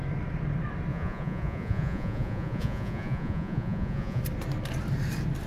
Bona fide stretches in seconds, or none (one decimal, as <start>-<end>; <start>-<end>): 0.0-0.9; 4.2-5.5